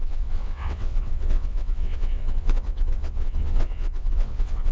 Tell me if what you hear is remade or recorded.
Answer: remade